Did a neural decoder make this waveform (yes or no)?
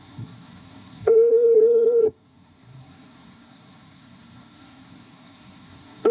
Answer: yes